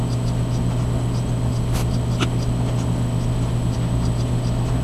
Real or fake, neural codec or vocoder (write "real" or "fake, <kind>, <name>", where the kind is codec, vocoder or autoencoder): real